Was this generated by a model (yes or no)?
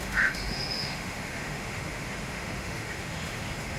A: yes